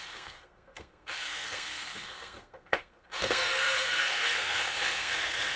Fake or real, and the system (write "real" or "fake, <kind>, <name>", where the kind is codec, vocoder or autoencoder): fake, codec, SNAC